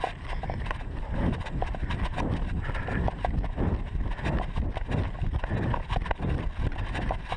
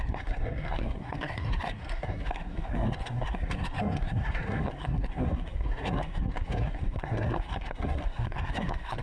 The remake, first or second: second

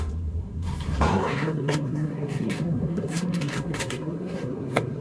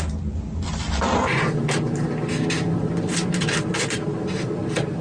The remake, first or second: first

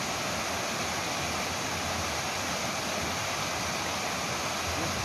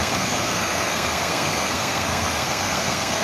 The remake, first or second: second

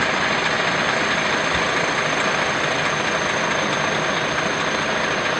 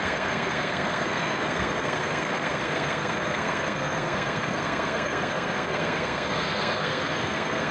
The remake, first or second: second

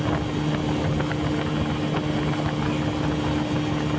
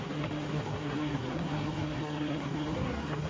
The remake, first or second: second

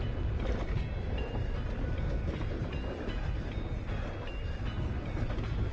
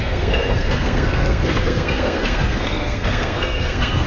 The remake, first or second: second